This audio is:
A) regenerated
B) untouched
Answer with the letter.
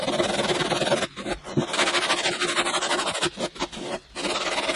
B